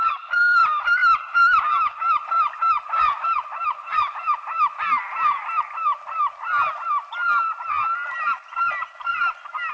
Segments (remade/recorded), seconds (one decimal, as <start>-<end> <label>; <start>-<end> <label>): 0.0-9.7 recorded